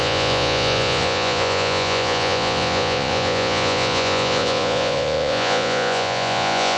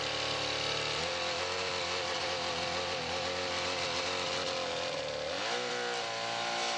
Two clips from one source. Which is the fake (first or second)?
first